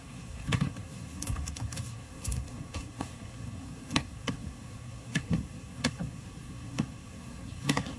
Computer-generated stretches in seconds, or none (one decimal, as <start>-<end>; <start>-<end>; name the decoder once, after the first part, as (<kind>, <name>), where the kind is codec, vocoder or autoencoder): 0.0-8.0 (codec, SNAC)